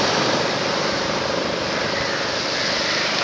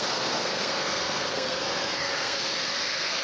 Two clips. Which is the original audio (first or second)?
first